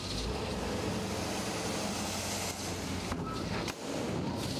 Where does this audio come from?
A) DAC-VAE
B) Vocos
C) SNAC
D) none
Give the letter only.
D